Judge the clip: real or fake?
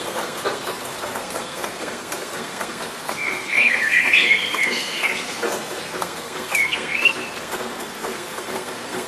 fake